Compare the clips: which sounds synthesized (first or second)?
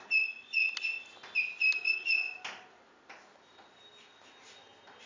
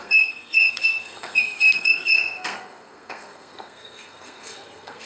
second